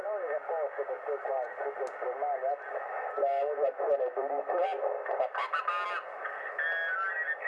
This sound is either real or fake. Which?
real